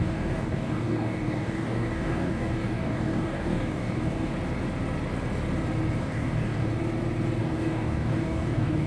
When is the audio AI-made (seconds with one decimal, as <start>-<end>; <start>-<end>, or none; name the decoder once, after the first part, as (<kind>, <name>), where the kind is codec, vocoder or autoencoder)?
0.0-4.3 (codec, DAC); 6.0-6.7; 7.4-8.9